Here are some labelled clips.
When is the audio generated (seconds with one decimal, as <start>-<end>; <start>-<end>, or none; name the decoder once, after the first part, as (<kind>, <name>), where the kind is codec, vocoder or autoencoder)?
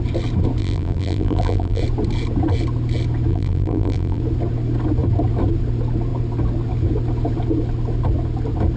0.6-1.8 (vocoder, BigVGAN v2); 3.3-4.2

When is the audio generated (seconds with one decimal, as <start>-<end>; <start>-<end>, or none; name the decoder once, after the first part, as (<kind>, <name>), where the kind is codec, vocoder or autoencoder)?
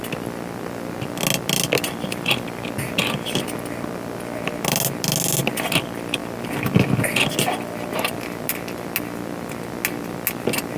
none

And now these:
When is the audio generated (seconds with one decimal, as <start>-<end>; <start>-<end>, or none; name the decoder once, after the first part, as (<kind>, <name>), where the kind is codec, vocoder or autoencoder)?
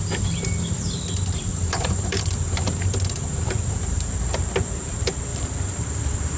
1.5-4.1 (vocoder, BigVGAN v2); 5.3-6.4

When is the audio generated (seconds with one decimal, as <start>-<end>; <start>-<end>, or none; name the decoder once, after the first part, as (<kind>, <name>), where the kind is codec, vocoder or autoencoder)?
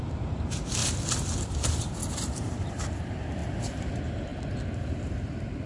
0.0-0.8 (vocoder, BigVGAN v2); 1.5-3.4; 3.9-4.3; 4.8-5.7